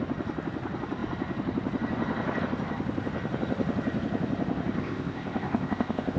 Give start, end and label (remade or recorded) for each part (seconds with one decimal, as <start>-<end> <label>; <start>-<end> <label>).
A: 0.0-4.8 recorded; 4.8-6.2 remade